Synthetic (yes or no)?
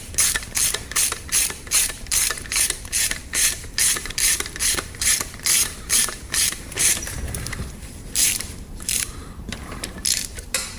yes